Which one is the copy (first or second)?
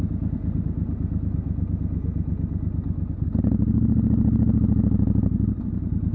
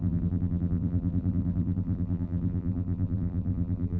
second